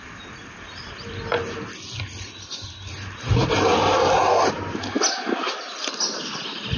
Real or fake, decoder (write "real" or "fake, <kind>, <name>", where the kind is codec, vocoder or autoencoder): real